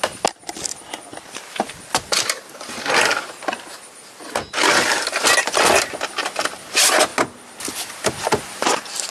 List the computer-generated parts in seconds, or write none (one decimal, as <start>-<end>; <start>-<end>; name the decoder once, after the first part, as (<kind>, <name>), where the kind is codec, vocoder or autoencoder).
none